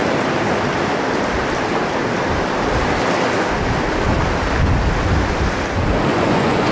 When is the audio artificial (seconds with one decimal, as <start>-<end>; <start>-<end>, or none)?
6.1-6.7